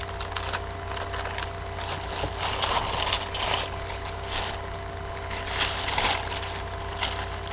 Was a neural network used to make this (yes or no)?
no